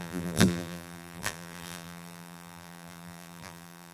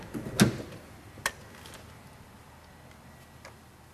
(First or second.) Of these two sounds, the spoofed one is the first